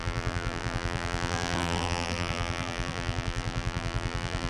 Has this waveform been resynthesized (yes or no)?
yes